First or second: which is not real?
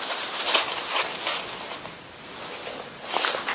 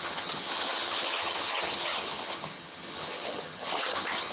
second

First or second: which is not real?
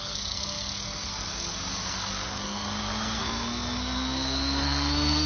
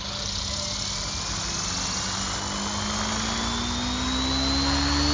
first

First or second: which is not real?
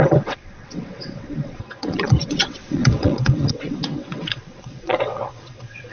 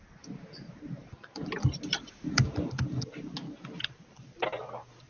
first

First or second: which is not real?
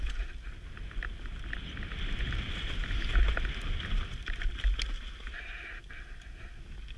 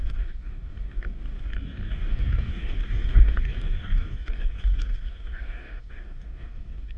second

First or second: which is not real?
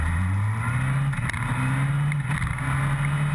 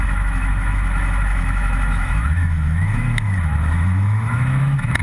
second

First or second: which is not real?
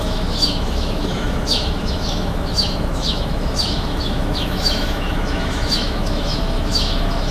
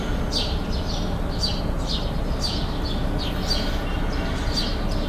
first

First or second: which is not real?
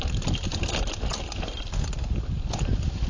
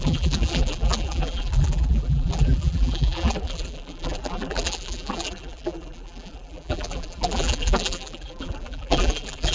second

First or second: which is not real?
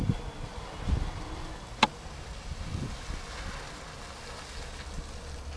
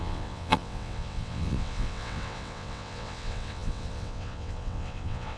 second